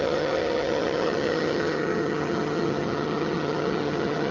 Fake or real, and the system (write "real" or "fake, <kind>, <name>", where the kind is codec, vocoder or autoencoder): fake, vocoder, HiFi-GAN